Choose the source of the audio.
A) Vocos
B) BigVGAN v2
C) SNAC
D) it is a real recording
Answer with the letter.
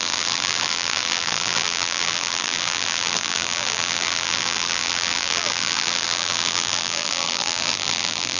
B